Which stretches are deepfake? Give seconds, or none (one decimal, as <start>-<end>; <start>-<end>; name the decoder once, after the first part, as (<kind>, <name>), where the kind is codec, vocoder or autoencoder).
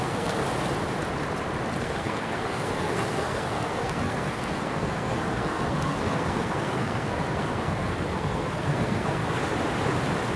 0.0-0.4 (codec, SNAC); 1.8-9.2